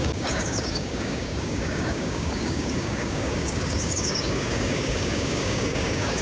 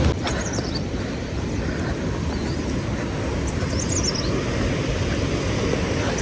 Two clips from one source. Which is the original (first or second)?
second